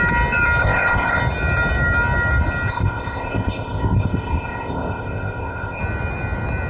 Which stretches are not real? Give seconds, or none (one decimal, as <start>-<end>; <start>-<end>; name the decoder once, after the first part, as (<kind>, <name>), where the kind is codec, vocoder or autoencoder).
0.6-1.2 (codec, ZipCodec); 2.7-5.8